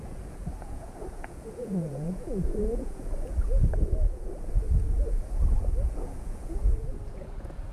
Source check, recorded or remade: remade